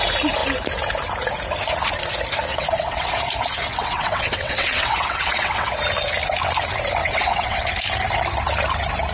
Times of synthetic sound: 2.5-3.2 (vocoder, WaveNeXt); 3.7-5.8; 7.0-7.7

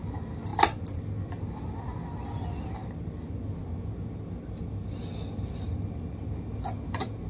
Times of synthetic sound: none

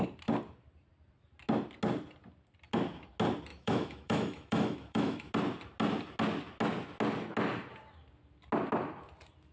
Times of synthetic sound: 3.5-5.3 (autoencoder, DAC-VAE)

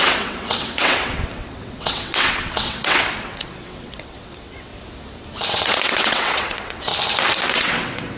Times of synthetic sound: 0.0-4.7 (vocoder, WaveNeXt); 5.5-6.9; 7.5-8.2